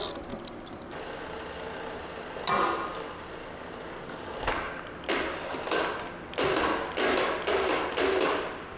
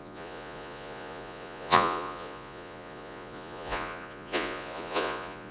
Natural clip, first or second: first